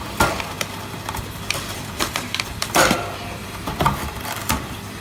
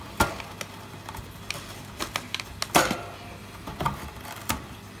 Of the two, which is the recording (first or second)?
second